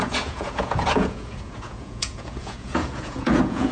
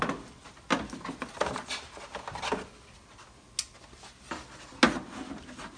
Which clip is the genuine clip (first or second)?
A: second